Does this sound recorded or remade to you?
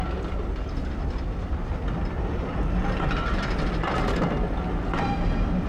recorded